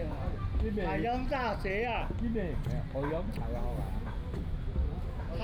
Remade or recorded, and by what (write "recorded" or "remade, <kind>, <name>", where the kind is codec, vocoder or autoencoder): recorded